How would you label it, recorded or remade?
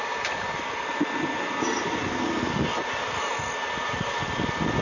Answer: recorded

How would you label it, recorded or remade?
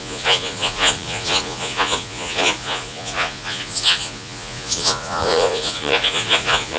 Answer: remade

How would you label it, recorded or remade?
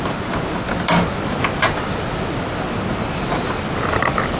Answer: recorded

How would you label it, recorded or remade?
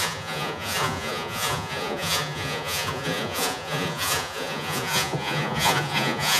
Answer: remade